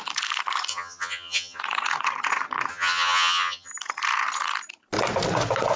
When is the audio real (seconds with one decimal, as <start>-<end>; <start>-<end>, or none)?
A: 0.0-0.7; 1.6-2.7; 3.7-5.8